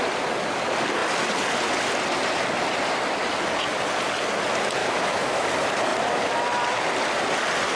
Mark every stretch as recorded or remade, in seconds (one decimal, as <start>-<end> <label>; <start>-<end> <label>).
0.0-4.8 recorded; 4.8-5.5 remade; 5.5-7.8 recorded

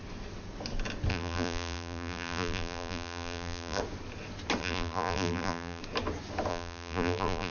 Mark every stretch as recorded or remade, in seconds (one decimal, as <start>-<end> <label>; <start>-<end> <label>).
0.0-1.1 recorded; 1.1-3.8 remade; 3.8-4.6 recorded; 4.6-5.8 remade; 5.8-6.5 recorded; 6.5-7.5 remade

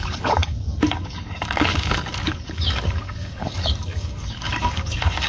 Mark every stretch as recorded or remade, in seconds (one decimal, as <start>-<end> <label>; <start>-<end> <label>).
0.0-5.3 remade

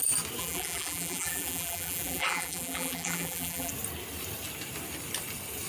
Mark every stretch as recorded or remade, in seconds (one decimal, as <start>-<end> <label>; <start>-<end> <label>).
0.0-0.4 recorded; 0.4-3.7 remade; 3.7-5.7 recorded

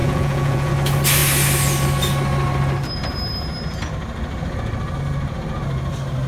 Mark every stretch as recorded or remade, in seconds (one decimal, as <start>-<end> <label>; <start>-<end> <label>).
0.0-0.7 remade; 0.7-6.3 recorded

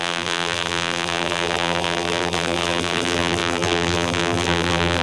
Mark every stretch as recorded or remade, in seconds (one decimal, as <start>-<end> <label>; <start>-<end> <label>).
0.0-5.0 remade

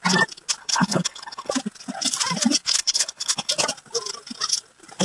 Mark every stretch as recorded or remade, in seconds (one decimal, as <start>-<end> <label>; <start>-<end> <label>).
0.0-0.6 recorded; 0.6-1.5 remade; 1.5-2.8 recorded; 2.8-3.5 remade; 3.5-5.0 recorded